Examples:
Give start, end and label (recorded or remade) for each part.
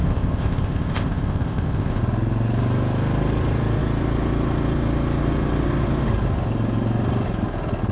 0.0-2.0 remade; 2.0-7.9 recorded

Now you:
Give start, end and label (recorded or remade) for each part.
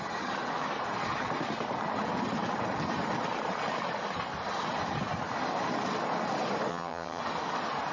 0.0-6.7 recorded; 6.7-7.2 remade; 7.2-7.9 recorded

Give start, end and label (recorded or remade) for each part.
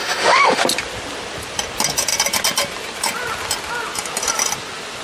0.0-0.6 remade; 0.6-5.0 recorded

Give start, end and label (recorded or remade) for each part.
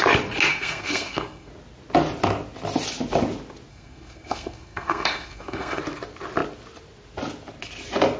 0.0-0.5 recorded; 0.5-1.5 remade; 1.5-3.7 recorded; 3.7-5.8 remade; 5.8-8.2 recorded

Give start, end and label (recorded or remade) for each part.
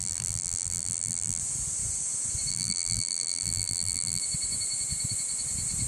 0.0-1.4 remade; 1.4-2.5 recorded; 2.5-4.2 remade; 4.2-5.9 recorded